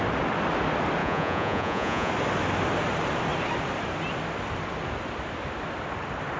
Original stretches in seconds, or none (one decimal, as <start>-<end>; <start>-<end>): 0.0-1.0; 2.1-6.4